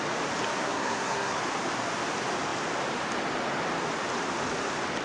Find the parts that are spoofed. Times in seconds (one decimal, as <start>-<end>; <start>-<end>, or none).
0.6-1.4